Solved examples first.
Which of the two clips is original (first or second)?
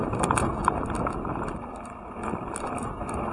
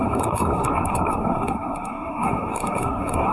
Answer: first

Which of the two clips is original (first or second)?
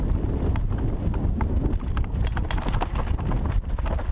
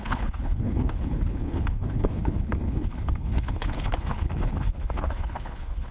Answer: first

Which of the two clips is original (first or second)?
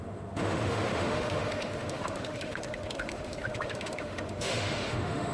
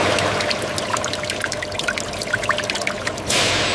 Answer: second